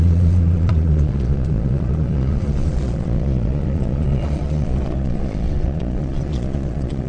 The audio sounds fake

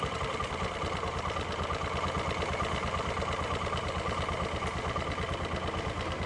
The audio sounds real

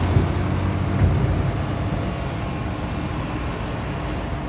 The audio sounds real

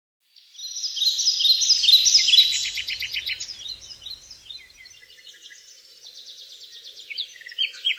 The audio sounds real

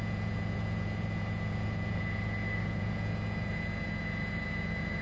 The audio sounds fake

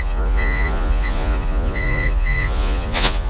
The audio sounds fake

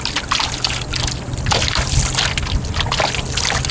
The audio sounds real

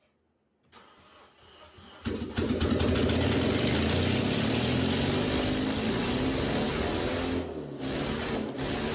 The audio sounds real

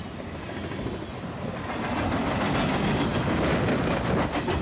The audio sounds real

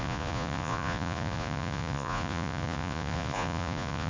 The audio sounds fake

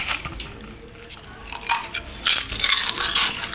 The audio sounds real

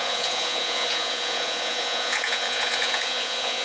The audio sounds fake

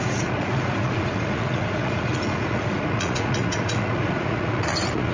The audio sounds fake